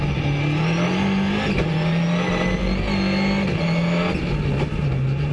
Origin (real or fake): real